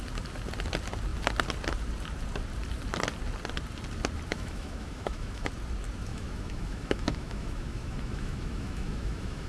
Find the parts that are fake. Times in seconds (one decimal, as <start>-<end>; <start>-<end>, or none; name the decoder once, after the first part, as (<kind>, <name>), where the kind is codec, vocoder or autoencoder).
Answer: 4.3-5.5 (autoencoder, DAC-VAE); 6.1-9.5

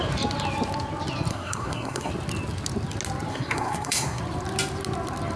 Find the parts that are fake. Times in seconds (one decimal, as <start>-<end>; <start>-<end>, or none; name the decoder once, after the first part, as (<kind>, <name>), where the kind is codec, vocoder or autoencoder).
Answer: 1.3-2.1 (codec, SNAC); 3.3-4.2